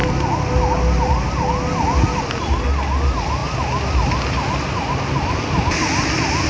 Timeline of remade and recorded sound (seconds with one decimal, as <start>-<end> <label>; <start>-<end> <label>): 0.0-6.5 recorded